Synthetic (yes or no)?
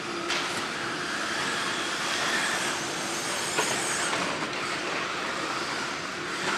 no